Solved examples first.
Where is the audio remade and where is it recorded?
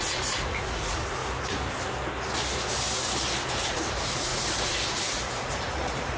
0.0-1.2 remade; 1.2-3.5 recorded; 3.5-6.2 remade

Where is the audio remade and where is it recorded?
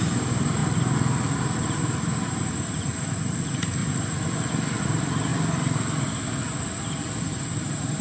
0.0-0.6 remade; 0.6-1.4 recorded; 1.4-3.8 remade; 3.8-4.8 recorded; 4.8-5.3 remade; 5.3-6.8 recorded; 6.8-8.0 remade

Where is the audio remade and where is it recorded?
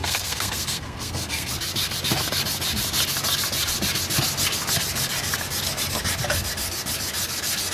0.0-1.5 remade; 1.5-7.7 recorded